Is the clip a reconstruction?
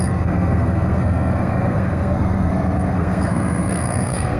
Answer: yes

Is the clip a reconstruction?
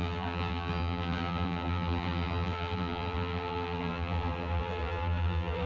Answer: yes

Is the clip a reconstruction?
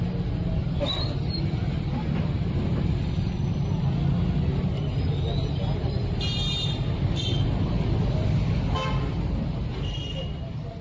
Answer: no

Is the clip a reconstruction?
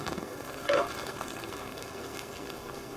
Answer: yes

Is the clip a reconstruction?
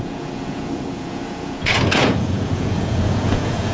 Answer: yes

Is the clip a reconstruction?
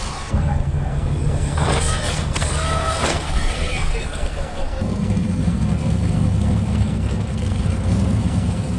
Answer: yes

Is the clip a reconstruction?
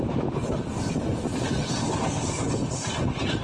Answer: no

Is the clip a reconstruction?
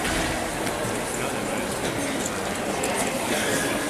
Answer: no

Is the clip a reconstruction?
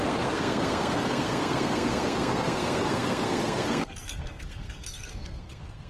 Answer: yes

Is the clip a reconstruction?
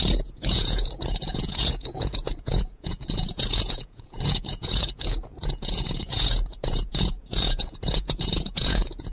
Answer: yes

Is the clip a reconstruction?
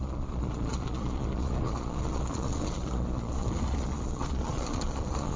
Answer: yes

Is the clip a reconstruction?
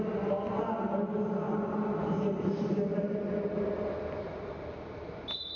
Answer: no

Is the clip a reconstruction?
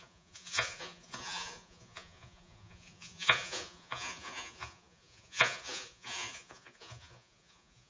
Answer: yes